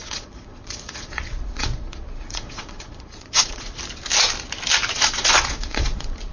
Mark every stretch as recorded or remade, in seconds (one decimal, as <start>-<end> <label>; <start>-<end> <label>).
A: 0.0-3.8 remade; 3.8-4.9 recorded; 4.9-6.3 remade